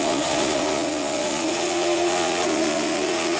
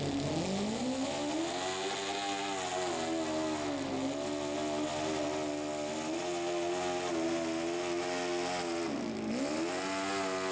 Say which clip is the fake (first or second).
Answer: first